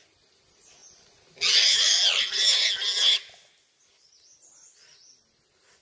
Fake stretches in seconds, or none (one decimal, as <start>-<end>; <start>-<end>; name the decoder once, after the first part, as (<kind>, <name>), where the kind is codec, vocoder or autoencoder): none